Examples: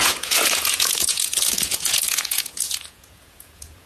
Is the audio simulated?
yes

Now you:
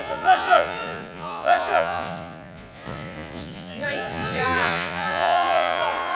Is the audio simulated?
yes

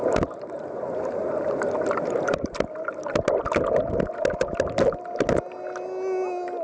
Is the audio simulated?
no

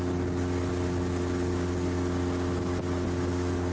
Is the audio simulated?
no